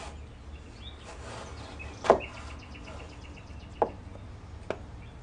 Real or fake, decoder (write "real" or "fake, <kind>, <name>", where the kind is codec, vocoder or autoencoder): real